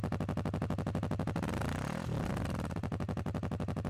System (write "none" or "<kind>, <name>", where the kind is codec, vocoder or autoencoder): none